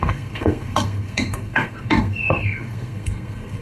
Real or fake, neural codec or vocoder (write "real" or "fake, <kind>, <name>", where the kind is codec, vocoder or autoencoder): fake, codec, SNAC